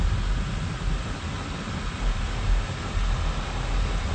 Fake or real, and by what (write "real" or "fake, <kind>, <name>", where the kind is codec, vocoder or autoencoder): real